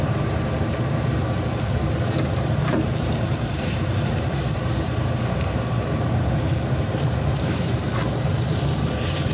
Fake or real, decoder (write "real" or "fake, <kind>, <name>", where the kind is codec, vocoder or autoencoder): fake, vocoder, BigVGAN v2